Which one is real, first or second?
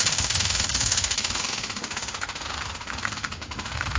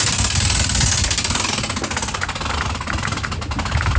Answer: second